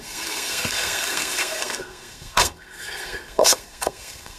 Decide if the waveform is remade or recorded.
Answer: remade